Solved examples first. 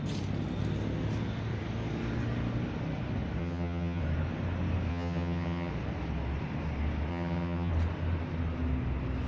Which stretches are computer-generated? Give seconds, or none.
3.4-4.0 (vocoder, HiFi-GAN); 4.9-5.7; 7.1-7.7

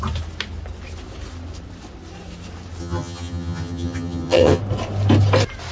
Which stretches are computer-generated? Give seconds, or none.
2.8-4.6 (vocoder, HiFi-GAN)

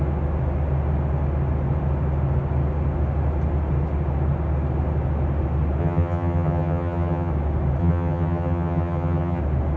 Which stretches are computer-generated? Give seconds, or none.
5.8-7.3 (vocoder, HiFi-GAN); 7.8-9.4

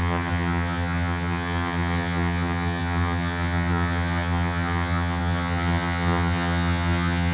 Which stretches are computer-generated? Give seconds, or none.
0.0-7.3 (vocoder, HiFi-GAN)

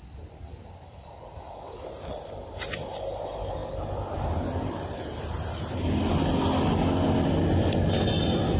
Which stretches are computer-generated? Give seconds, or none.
none

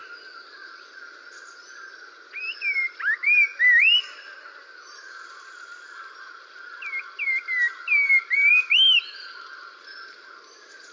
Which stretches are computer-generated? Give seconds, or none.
none